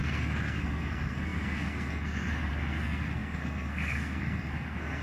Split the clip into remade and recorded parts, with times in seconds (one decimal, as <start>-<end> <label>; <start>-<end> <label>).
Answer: 0.0-5.0 remade